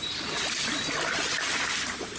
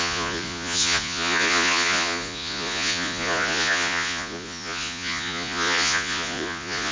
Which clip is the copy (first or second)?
second